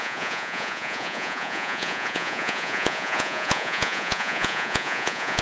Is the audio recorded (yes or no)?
no